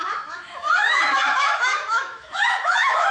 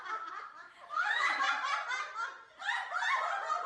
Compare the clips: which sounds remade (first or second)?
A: first